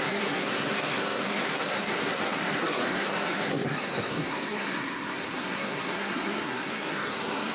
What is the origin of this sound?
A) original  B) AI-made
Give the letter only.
B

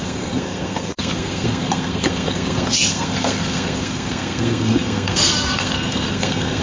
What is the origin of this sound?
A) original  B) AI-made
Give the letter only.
B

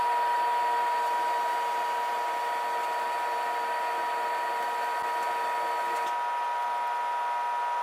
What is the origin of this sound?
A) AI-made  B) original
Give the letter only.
B